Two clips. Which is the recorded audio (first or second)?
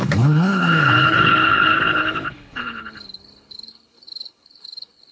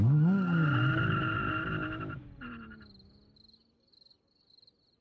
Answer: second